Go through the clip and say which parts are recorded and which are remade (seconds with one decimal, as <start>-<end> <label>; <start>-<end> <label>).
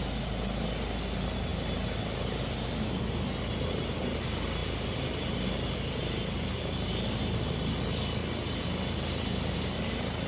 0.0-10.3 recorded